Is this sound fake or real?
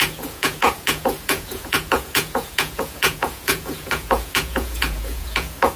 fake